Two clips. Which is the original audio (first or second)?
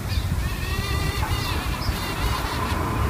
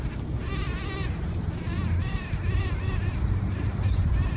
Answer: second